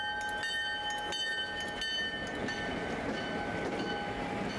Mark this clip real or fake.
real